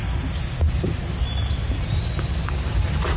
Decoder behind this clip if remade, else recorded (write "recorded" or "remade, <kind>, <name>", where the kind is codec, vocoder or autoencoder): recorded